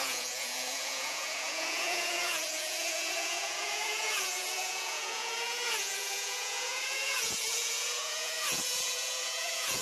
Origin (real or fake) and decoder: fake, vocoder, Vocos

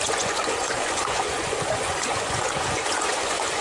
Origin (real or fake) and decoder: fake, vocoder, Vocos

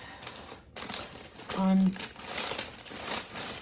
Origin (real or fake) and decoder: real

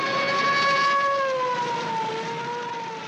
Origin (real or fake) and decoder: real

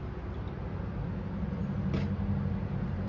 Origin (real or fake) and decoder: real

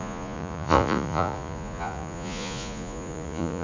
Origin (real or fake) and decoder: fake, vocoder, Vocos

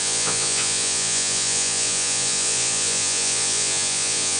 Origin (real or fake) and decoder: fake, vocoder, Vocos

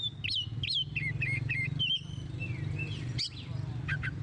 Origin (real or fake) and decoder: real